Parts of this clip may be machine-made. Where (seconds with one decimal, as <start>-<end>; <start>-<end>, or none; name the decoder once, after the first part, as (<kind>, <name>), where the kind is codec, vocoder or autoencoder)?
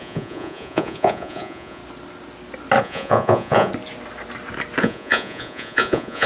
0.0-1.8 (vocoder, Vocos); 2.8-3.7; 4.8-6.3